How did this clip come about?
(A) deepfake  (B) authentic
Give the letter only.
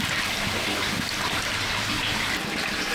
B